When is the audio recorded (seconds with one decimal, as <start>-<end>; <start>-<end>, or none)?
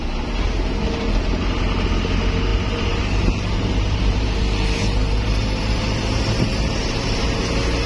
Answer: 0.0-2.5; 7.2-7.9